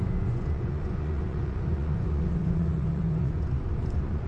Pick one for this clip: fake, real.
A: fake